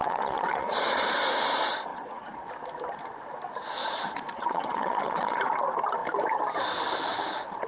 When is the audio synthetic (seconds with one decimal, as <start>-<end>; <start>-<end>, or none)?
0.0-1.2; 1.9-2.5; 3.8-5.4